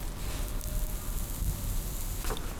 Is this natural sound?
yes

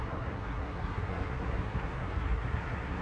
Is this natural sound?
no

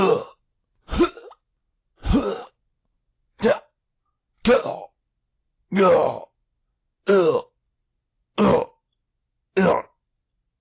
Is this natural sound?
yes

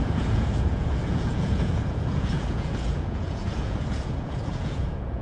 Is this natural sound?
no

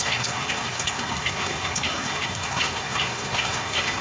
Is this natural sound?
no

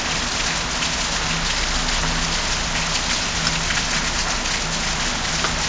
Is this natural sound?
yes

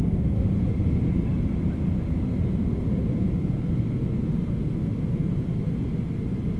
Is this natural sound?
yes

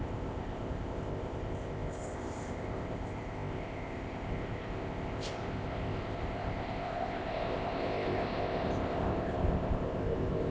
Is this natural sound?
no